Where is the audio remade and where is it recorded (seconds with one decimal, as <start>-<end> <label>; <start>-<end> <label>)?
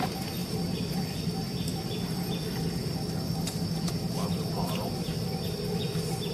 0.0-0.4 recorded; 0.4-1.2 remade; 1.2-6.3 recorded